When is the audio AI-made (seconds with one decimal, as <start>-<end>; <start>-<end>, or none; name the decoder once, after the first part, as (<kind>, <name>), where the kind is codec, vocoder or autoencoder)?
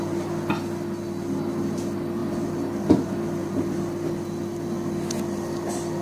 none